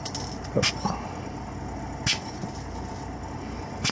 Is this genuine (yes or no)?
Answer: yes